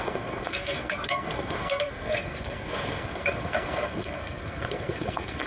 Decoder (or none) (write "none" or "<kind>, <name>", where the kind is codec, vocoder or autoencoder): codec, SNAC